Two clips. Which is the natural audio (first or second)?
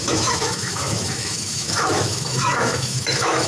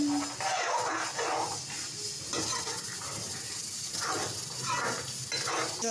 second